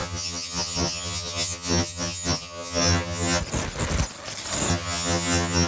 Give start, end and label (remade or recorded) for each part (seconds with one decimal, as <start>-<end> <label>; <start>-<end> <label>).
0.0-3.4 remade; 3.4-4.7 recorded; 4.7-5.7 remade